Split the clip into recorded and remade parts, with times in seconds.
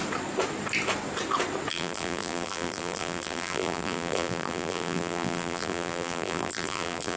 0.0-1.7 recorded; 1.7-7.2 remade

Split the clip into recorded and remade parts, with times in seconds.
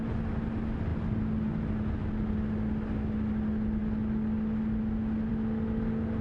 0.0-6.2 recorded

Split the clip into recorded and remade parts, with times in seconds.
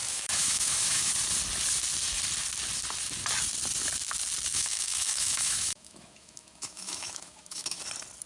0.0-1.1 remade; 1.1-4.5 recorded; 4.5-7.8 remade; 7.8-8.3 recorded